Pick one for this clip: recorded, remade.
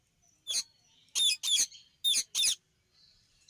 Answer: recorded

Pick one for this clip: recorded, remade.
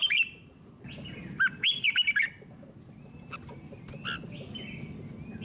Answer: recorded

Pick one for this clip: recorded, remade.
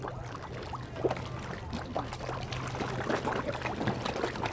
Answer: recorded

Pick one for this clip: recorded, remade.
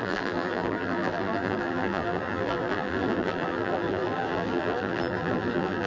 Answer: remade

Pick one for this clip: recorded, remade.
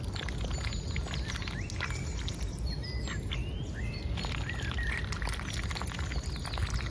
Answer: recorded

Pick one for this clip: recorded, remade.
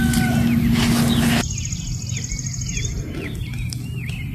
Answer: recorded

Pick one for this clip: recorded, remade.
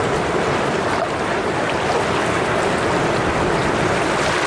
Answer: recorded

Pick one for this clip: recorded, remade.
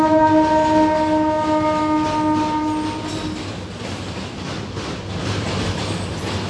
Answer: recorded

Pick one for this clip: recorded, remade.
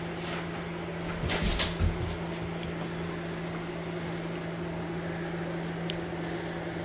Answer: recorded